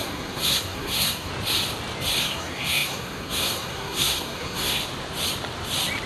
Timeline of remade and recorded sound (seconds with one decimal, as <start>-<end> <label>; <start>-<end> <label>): 0.0-1.3 remade; 1.3-2.2 recorded; 2.2-4.8 remade; 4.8-6.1 recorded